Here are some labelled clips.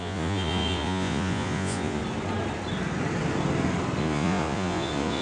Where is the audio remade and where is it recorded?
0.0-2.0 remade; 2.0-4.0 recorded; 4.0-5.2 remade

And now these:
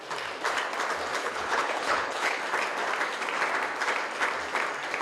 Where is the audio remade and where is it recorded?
0.0-1.2 recorded; 1.2-2.4 remade; 2.4-5.0 recorded

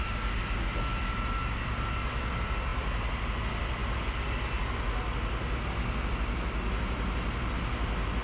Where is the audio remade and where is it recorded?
0.0-8.2 recorded

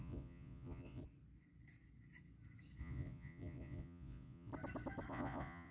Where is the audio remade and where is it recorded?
0.0-1.0 remade; 1.0-2.8 recorded; 2.8-4.5 remade; 4.5-5.1 recorded; 5.1-5.7 remade

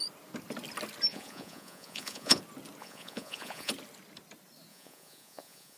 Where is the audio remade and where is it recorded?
0.0-1.1 recorded; 1.1-2.4 remade; 2.4-2.8 recorded; 2.8-3.7 remade; 3.7-4.7 recorded; 4.7-5.8 remade

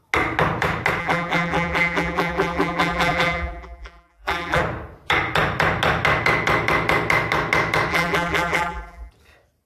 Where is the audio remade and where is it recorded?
0.0-1.0 recorded; 1.0-4.6 remade; 4.6-7.9 recorded; 7.9-9.1 remade; 9.1-9.7 recorded

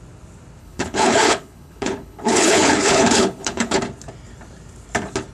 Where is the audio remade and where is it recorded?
0.0-0.6 recorded; 0.6-3.8 remade; 3.8-5.3 recorded